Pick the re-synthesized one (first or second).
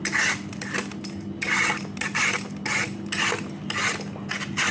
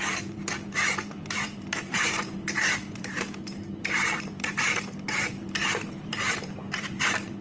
second